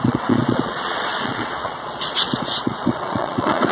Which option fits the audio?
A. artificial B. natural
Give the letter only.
A